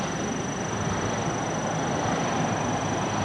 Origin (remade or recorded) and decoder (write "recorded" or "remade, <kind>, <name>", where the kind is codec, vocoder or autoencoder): recorded